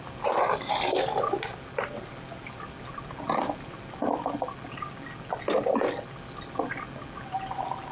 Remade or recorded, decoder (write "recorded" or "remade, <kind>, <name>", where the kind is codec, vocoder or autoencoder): recorded